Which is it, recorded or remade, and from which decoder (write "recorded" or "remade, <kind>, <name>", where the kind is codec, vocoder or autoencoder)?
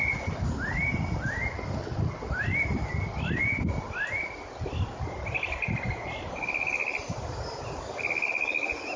recorded